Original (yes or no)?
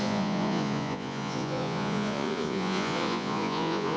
no